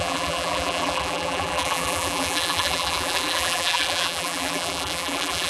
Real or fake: fake